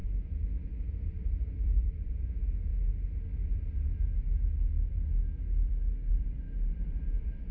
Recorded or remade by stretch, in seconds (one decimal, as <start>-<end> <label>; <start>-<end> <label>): 0.0-1.8 recorded; 1.8-2.7 remade; 2.7-6.1 recorded; 6.1-7.5 remade